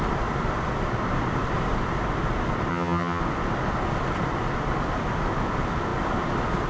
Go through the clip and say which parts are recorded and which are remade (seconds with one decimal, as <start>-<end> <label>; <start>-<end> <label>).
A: 0.0-2.7 recorded; 2.7-3.2 remade; 3.2-6.7 recorded